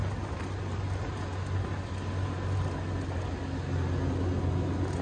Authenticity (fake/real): real